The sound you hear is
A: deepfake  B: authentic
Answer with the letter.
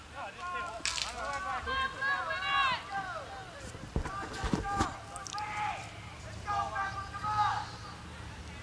B